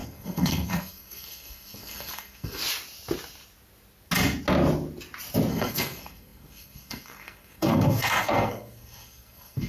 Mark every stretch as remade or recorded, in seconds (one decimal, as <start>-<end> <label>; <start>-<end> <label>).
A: 0.0-2.6 remade; 2.6-5.5 recorded; 5.5-9.7 remade

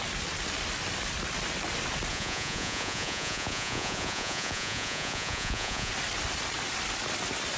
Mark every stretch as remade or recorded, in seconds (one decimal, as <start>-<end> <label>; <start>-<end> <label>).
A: 0.0-2.1 recorded; 2.1-5.9 remade; 5.9-7.6 recorded

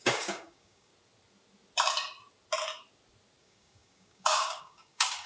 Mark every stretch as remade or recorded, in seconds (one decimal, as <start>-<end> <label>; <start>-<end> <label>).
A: 0.0-0.9 remade; 0.9-3.4 recorded; 3.4-5.3 remade